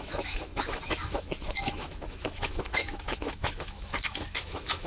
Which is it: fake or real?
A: fake